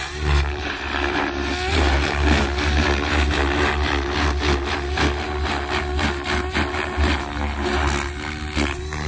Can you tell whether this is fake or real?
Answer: real